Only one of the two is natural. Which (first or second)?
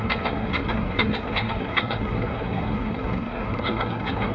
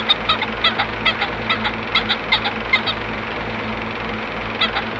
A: second